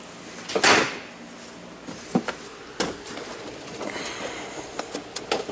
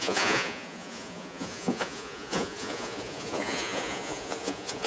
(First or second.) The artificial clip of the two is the second